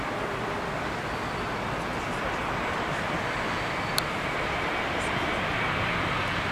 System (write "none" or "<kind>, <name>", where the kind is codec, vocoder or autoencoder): none